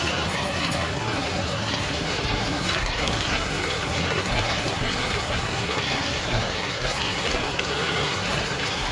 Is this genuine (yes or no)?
no